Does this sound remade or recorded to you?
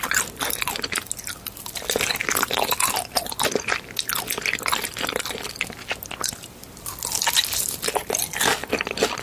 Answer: recorded